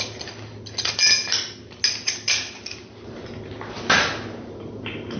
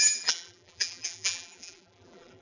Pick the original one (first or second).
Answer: first